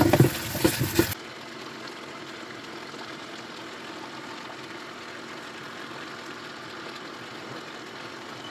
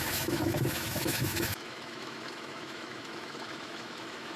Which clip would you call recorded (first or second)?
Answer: first